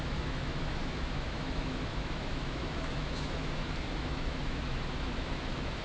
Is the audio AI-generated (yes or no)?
yes